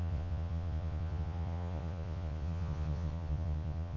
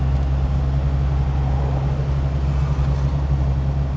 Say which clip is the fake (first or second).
first